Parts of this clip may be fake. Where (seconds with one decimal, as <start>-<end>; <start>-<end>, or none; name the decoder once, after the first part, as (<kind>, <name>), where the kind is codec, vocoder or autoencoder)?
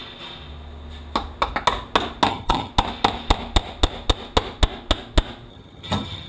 2.3-2.7 (vocoder, HiFi-GAN); 5.5-6.3